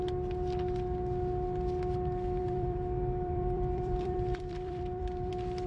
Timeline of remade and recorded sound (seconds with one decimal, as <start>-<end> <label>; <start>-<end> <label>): 0.0-2.4 recorded; 2.4-5.3 remade; 5.3-5.7 recorded